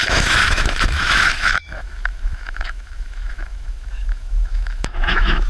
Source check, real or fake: fake